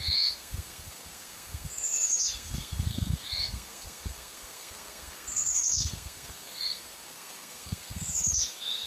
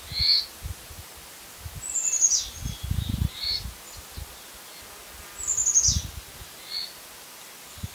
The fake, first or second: first